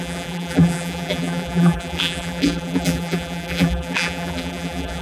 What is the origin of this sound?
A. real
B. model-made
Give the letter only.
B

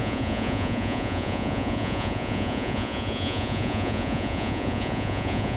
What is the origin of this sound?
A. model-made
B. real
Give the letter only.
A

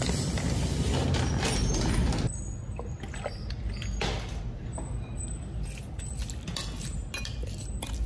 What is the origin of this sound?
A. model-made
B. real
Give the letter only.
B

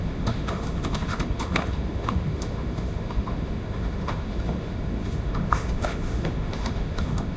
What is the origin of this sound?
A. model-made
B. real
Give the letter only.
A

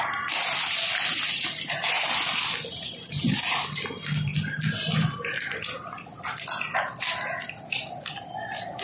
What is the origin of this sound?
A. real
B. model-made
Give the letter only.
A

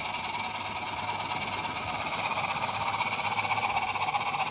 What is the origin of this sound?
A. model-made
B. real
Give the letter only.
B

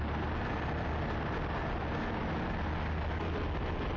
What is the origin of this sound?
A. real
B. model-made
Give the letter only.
A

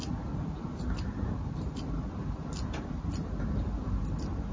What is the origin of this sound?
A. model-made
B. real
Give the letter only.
B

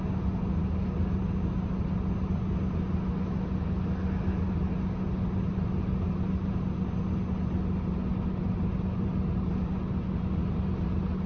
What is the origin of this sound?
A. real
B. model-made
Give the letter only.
A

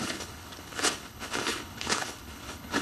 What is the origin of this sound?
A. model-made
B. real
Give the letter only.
A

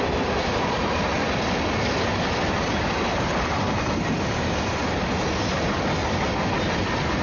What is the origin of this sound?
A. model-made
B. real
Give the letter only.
B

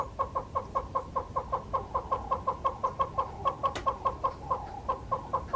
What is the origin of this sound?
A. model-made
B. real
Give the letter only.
B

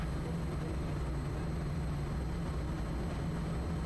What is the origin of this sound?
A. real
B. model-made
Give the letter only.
A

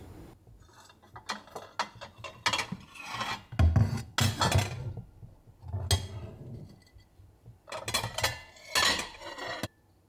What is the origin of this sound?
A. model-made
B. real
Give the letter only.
B